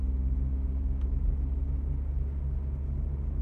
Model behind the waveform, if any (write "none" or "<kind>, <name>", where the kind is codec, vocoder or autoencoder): none